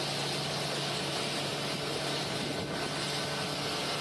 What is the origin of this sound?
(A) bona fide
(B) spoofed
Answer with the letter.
A